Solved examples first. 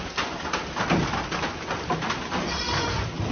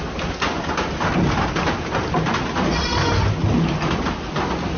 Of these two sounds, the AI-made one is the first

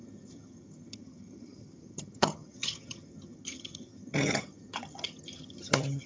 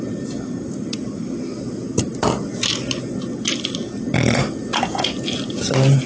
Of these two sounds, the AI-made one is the first